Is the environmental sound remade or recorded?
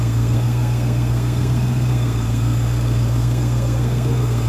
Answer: remade